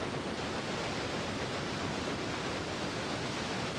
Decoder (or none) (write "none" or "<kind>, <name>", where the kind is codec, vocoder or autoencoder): none